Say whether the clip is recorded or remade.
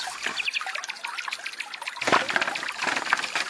recorded